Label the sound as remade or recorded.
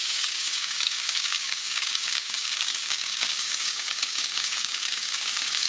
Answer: remade